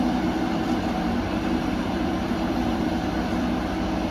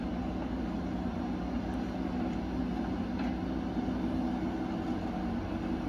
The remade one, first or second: first